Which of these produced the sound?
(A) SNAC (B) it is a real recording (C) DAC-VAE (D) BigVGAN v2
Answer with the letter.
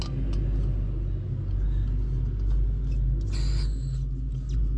B